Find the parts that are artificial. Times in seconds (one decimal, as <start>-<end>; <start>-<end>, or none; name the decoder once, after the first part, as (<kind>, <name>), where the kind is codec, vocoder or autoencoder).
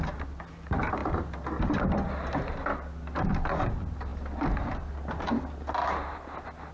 none